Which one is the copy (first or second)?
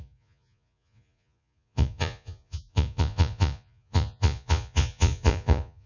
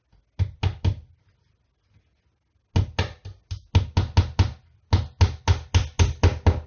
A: first